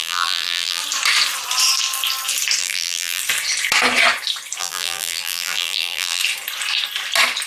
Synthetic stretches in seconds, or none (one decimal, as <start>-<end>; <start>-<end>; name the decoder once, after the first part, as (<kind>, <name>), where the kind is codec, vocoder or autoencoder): 0.0-0.8 (vocoder, BigVGAN v2); 2.6-3.2; 4.6-6.2